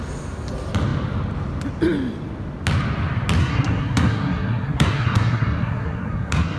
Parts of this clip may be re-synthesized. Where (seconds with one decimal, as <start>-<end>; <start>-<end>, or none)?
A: 3.4-6.6